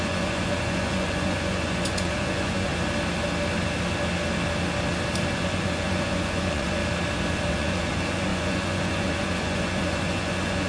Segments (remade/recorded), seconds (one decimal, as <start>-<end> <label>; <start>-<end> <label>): 0.0-2.7 remade; 2.7-5.3 recorded; 5.3-6.8 remade; 6.8-7.5 recorded; 7.5-10.7 remade